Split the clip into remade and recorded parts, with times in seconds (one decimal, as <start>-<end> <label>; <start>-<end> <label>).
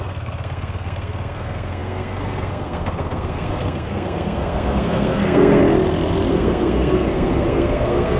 0.0-5.6 remade; 5.6-6.3 recorded; 6.3-8.2 remade